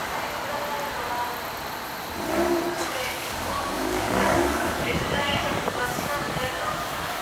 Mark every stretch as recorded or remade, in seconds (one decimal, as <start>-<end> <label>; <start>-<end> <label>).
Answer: 0.0-2.8 recorded; 2.8-7.2 remade